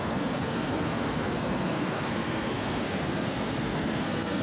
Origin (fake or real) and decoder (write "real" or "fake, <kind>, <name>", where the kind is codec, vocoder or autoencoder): fake, codec, SNAC